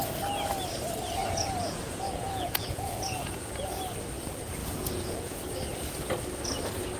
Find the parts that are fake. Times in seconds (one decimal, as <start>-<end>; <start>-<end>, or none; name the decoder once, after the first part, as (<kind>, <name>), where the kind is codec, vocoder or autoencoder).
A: 1.2-3.7 (vocoder, Vocos); 4.6-5.4